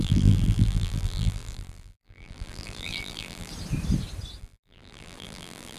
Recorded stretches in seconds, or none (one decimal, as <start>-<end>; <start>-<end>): 3.5-4.4